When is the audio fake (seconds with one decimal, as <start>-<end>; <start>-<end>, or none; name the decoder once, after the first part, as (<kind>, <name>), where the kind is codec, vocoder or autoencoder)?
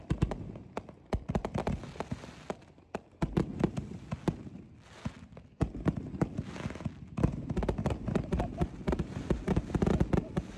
none